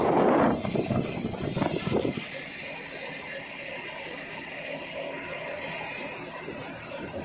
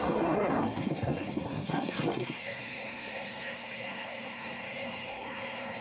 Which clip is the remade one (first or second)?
second